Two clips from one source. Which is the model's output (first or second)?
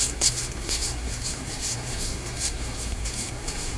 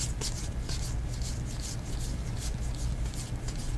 first